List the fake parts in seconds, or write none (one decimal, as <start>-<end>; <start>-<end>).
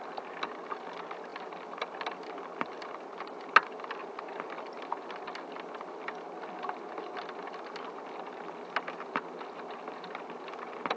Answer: none